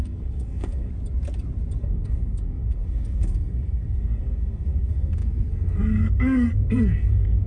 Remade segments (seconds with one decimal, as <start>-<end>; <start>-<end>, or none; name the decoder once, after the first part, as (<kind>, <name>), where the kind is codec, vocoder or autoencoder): 0.0-0.9 (codec, SNAC); 1.8-7.5